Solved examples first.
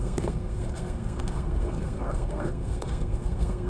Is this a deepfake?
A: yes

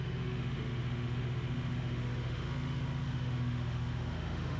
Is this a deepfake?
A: yes